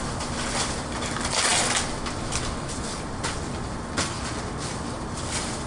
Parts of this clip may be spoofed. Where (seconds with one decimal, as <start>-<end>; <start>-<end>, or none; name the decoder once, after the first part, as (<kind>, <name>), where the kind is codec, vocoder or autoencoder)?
none